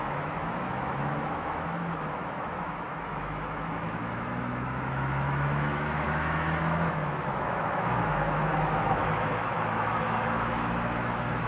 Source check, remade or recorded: remade